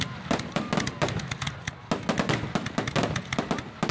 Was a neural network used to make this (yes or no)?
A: no